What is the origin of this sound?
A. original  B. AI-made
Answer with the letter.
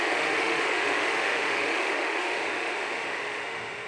B